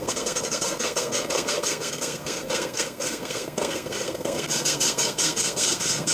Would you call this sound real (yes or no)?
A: no